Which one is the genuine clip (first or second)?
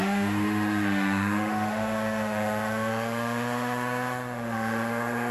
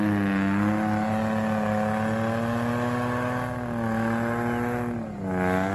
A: second